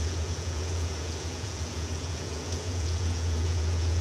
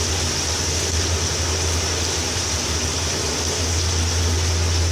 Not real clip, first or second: first